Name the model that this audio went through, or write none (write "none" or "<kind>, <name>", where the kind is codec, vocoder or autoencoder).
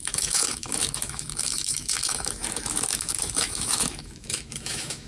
autoencoder, DAC-VAE